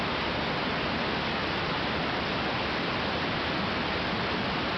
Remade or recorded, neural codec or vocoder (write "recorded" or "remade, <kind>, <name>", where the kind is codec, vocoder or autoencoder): recorded